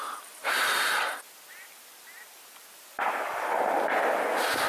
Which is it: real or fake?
real